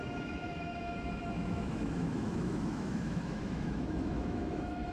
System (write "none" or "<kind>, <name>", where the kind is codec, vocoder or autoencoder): autoencoder, DAC-VAE